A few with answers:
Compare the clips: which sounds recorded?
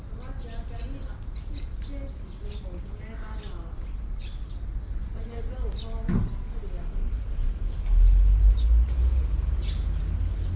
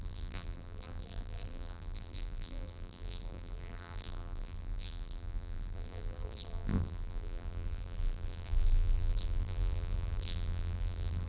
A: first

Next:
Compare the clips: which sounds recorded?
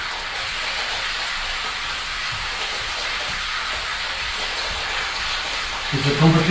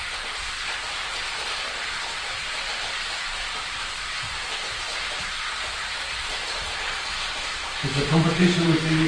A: first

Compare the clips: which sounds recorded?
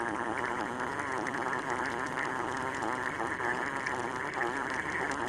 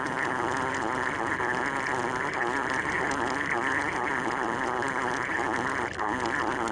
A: second